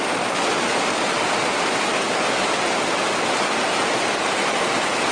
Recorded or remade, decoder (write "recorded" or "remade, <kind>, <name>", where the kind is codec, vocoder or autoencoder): remade, vocoder, BigVGAN v2